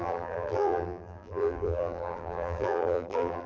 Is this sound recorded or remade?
remade